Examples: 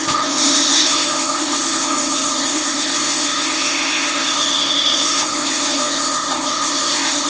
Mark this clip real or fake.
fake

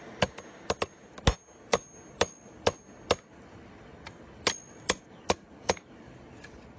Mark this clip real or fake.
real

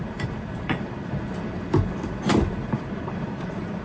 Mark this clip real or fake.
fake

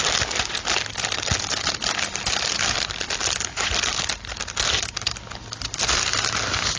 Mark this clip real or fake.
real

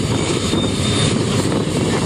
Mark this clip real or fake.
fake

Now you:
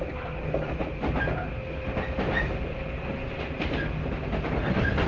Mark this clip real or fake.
real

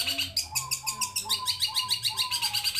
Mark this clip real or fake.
real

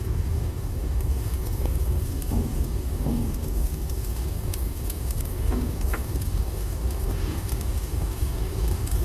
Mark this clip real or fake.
fake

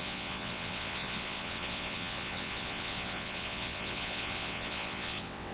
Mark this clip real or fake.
fake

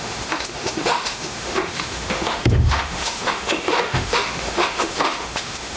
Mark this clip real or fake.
fake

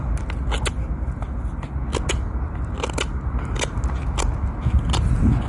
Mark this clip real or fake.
real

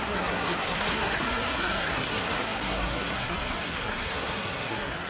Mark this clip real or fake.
fake